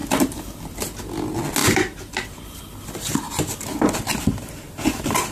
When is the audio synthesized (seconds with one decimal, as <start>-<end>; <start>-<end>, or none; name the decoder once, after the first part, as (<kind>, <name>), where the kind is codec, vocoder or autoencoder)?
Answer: 0.0-1.0 (vocoder, BigVGAN v2); 1.6-3.5